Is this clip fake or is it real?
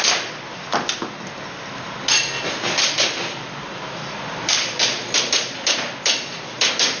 real